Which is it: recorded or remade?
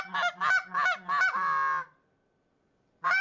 recorded